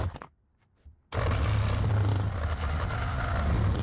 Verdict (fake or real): real